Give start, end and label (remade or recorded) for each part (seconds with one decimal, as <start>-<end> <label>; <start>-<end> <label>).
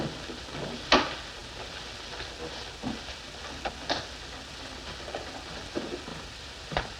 0.0-6.1 recorded; 6.1-7.0 remade